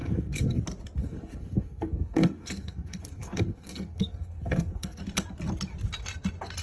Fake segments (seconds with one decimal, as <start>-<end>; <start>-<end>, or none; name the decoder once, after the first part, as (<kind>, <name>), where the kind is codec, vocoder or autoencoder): 0.0-0.6 (codec, SNAC); 1.0-5.0